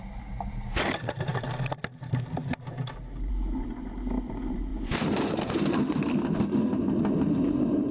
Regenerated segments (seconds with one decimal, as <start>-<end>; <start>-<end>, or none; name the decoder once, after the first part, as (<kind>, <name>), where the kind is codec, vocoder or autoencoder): 4.7-5.5 (vocoder, BigVGAN v2)